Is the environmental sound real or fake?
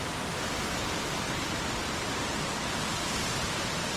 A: real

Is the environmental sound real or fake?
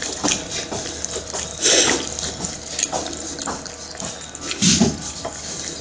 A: real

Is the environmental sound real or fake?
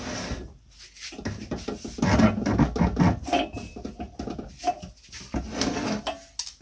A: real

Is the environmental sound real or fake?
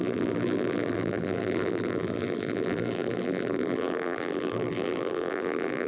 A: fake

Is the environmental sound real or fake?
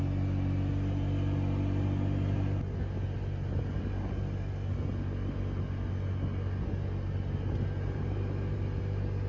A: real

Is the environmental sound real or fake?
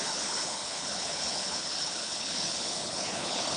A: fake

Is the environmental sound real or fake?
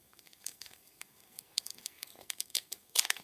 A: fake